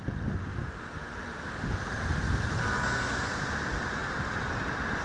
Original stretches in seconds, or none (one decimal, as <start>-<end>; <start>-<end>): 0.0-0.4; 1.8-5.0